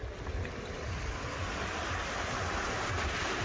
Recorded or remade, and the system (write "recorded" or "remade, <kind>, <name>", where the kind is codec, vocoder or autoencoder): recorded